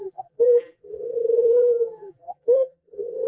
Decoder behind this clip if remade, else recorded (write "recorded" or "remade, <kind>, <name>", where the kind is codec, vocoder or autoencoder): remade, vocoder, BigVGAN v2